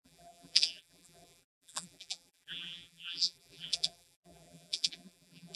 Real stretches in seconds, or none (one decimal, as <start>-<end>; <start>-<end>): none